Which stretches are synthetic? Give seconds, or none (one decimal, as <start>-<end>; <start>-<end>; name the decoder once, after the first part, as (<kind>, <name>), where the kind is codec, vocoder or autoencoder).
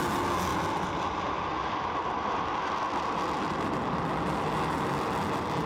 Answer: none